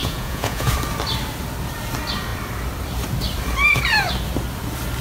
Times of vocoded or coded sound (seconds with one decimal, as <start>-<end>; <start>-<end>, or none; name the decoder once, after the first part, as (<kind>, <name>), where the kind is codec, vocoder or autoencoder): 0.0-0.7 (vocoder, Vocos)